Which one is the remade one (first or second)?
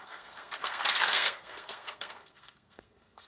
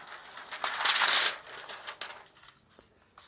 first